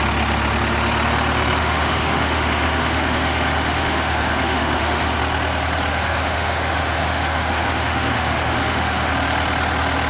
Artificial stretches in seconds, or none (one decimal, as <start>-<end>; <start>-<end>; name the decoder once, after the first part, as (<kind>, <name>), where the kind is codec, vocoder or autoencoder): 1.6-5.2 (autoencoder, DAC-VAE); 5.9-9.1